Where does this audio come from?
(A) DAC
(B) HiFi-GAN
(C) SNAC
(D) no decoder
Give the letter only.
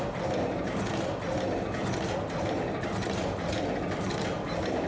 D